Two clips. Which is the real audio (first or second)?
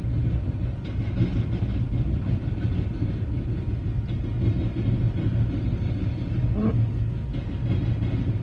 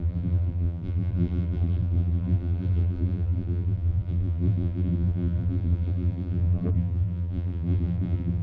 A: first